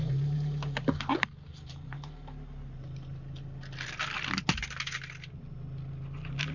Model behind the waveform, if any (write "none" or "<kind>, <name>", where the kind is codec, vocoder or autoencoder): none